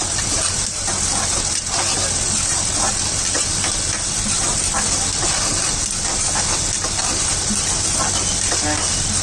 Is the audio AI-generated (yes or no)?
no